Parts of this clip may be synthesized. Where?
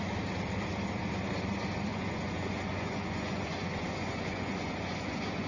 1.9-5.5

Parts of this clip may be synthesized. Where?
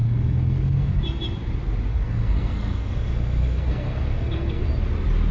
0.0-1.0; 1.9-4.6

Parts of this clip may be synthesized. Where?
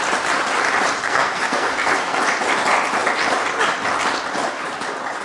1.0-2.2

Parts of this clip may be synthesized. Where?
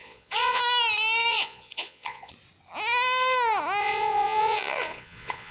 0.0-0.6; 1.3-2.3; 3.8-5.5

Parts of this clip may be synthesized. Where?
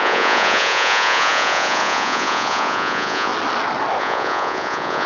0.0-3.3; 4.0-5.1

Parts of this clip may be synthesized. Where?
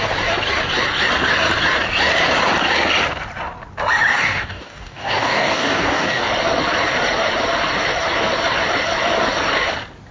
4.1-6.3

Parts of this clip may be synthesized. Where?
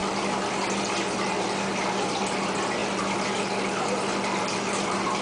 none